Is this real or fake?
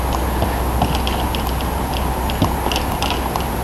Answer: real